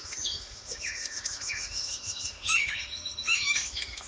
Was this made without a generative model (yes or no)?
no